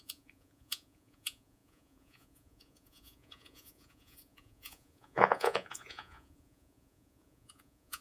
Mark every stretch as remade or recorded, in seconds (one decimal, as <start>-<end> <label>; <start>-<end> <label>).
0.0-8.0 remade